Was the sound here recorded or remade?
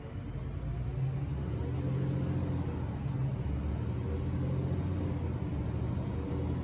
recorded